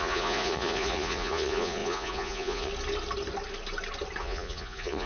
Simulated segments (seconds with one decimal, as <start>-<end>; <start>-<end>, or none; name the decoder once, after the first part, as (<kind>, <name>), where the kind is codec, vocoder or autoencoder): 0.0-2.7 (vocoder, Vocos); 4.2-5.1